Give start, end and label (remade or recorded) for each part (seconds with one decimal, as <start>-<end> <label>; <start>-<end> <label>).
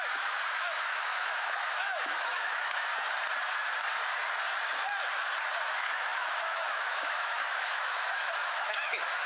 0.0-2.9 remade; 2.9-5.6 recorded; 5.6-9.3 remade